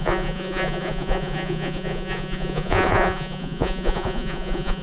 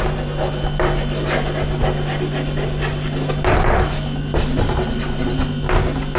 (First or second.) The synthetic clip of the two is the first